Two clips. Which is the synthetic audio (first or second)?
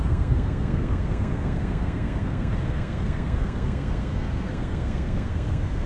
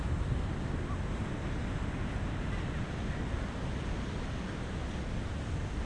first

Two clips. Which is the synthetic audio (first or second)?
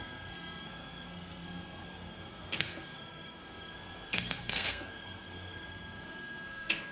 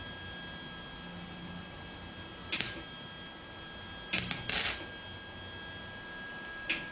first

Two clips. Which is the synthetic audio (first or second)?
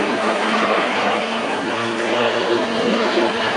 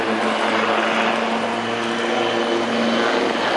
first